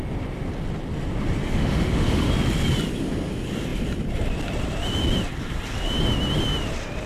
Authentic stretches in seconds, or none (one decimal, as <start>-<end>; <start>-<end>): 0.0-1.4; 2.3-7.1